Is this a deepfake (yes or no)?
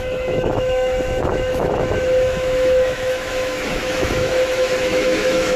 yes